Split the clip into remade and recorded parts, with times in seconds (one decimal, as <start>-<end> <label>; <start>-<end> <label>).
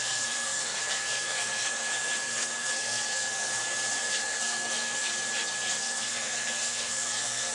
0.0-3.5 remade; 3.5-4.0 recorded; 4.0-5.1 remade; 5.1-5.7 recorded; 5.7-7.5 remade